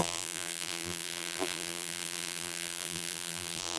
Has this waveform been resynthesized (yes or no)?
yes